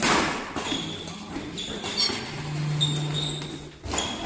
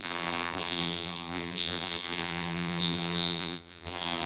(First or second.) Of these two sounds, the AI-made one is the second